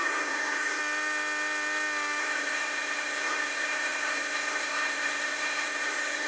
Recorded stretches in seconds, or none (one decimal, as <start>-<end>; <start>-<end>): 0.8-2.2